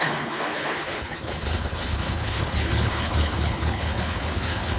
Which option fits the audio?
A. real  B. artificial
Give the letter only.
B